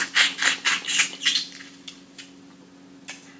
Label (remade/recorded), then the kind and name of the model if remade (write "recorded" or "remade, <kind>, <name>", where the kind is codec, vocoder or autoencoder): recorded